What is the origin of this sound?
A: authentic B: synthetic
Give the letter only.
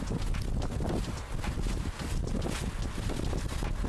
A